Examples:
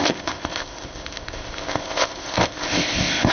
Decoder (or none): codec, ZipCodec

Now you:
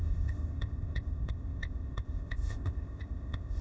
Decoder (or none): codec, ZipCodec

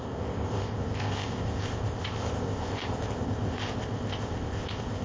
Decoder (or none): codec, ZipCodec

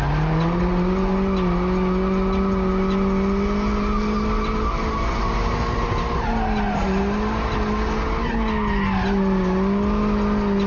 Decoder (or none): none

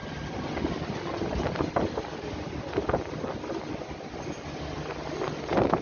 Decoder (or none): none